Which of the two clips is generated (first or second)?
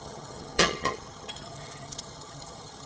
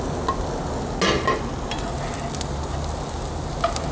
first